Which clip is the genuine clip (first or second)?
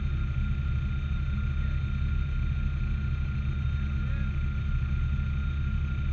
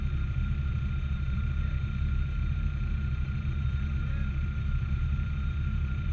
first